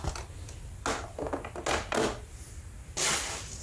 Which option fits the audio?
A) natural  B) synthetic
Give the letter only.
A